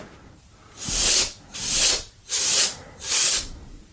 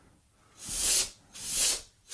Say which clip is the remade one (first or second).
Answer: first